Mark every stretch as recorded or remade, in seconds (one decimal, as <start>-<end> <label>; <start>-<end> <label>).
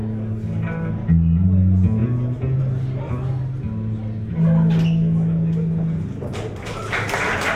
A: 0.0-7.6 recorded